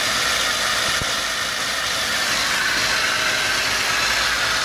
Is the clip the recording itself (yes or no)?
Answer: yes